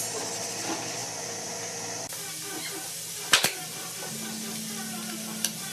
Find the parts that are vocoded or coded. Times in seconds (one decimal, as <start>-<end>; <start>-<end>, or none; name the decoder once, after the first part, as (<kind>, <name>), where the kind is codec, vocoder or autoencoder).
none

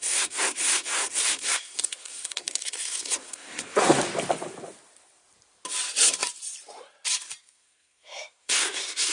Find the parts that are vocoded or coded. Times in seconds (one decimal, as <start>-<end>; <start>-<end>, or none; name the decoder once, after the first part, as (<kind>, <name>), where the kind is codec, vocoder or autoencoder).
0.0-4.0 (codec, SNAC); 7.4-9.1

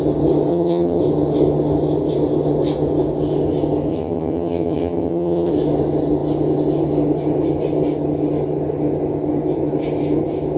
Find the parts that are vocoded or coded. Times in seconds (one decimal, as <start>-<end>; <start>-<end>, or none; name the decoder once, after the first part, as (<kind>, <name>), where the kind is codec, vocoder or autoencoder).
0.5-1.0 (vocoder, HiFi-GAN); 3.9-5.5

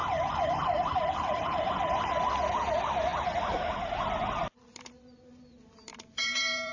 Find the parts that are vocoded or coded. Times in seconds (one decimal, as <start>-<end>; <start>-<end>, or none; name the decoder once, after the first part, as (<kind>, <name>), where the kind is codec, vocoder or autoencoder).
0.0-1.7 (vocoder, BigVGAN v2); 5.9-6.7